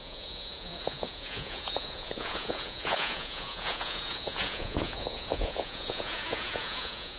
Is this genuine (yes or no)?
no